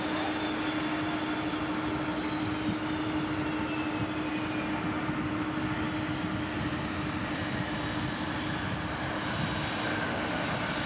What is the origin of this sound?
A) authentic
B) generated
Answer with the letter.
A